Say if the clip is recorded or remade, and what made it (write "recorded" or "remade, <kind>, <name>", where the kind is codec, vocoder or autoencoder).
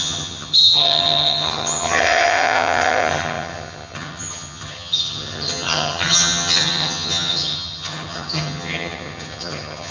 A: remade, vocoder, HiFi-GAN